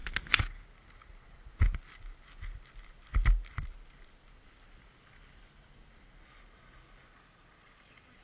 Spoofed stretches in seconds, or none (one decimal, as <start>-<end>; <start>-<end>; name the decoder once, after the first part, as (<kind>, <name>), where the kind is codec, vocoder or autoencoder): none